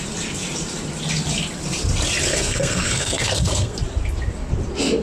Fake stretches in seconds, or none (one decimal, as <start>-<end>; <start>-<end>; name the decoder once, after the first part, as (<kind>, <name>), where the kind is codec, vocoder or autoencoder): 2.3-3.8 (codec, SNAC)